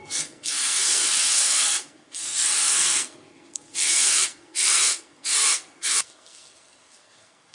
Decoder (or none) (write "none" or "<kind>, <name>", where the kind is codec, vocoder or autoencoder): codec, SNAC